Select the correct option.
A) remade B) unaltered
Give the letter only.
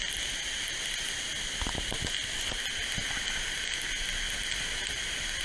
B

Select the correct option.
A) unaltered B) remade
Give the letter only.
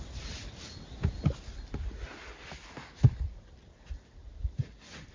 A